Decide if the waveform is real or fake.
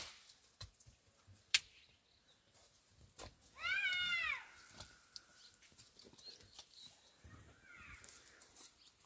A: real